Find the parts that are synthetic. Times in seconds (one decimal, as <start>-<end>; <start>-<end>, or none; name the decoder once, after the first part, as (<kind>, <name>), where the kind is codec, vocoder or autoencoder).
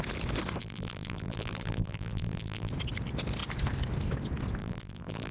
0.6-2.7 (vocoder, BigVGAN v2); 4.6-5.3